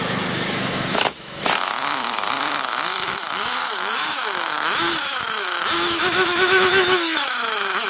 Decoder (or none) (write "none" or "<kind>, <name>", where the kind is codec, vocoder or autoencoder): autoencoder, DAC-VAE